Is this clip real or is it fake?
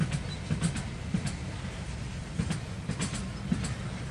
real